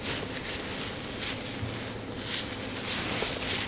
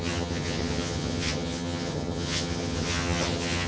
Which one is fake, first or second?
second